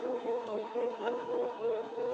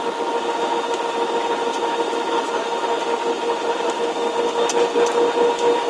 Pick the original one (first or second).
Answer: second